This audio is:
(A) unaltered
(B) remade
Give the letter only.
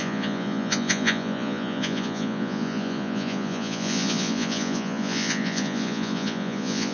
B